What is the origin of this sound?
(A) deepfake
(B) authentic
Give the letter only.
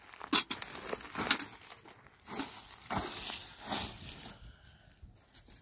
B